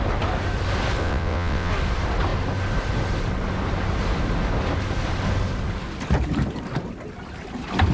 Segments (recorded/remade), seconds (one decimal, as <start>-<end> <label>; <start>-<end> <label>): 0.0-1.0 recorded; 1.0-1.7 remade; 1.7-7.9 recorded